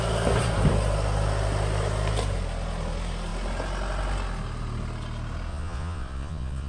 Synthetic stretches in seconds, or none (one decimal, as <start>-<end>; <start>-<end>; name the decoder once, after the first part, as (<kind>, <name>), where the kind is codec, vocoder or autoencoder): 5.5-6.7 (vocoder, Vocos)